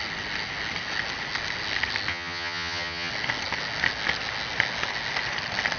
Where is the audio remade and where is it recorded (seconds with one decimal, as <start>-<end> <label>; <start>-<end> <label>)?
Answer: 0.0-2.1 recorded; 2.1-3.1 remade; 3.1-5.8 recorded